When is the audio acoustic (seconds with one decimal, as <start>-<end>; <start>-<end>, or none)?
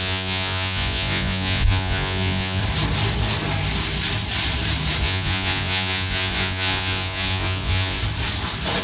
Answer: 2.6-5.0; 8.0-8.8